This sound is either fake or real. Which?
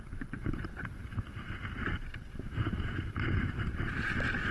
fake